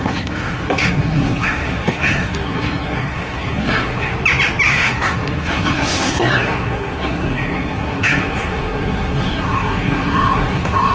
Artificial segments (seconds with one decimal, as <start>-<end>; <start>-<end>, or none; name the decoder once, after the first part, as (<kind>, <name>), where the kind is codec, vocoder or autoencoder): 0.0-4.1 (codec, SNAC); 4.7-10.9